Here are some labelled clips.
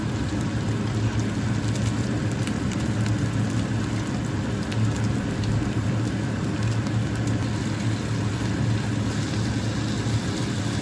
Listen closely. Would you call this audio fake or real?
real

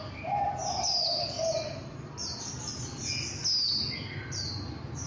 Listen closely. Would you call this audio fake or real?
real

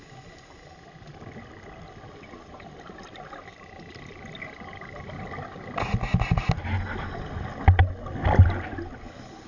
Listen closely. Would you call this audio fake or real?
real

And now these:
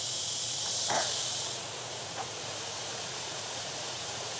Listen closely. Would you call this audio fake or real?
fake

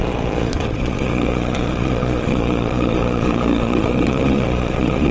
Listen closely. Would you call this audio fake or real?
fake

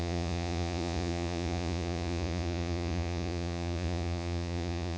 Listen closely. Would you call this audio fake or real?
fake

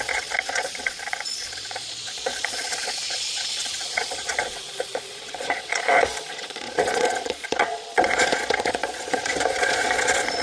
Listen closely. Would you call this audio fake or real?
fake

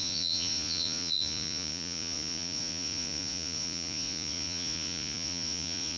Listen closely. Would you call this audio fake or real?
fake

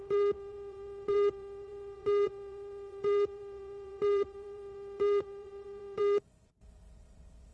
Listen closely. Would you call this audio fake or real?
fake